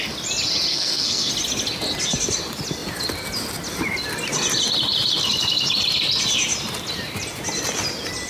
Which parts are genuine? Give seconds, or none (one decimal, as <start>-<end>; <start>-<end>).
0.0-0.7; 1.3-8.3